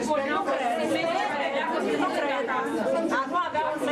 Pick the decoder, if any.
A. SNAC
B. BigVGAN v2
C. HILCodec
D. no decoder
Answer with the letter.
B